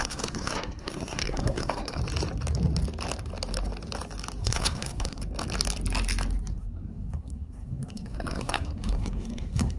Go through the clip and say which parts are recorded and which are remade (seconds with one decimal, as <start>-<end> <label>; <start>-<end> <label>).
0.0-2.0 remade; 2.0-4.4 recorded; 4.4-5.2 remade; 5.2-6.5 recorded; 6.5-9.8 remade